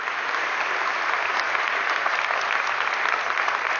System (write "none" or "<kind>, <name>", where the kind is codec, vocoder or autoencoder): none